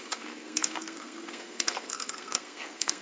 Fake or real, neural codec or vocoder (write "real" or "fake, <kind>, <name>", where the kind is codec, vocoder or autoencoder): fake, codec, SNAC